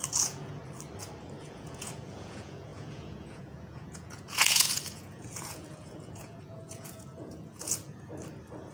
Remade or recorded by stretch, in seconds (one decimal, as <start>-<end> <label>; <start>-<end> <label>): 0.0-0.6 remade; 0.6-1.4 recorded; 1.4-8.1 remade; 8.1-8.7 recorded